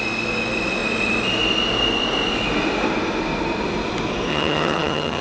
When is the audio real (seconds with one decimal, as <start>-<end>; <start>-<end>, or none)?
0.0-4.3